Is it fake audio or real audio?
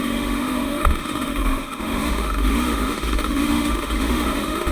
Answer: fake